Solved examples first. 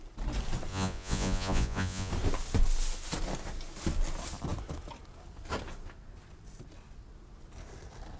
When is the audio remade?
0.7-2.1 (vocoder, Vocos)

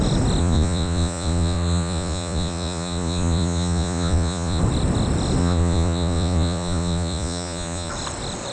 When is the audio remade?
0.4-4.6 (vocoder, Vocos); 5.4-7.9

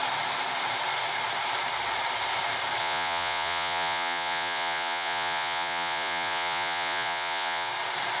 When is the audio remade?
2.8-7.7 (vocoder, Vocos)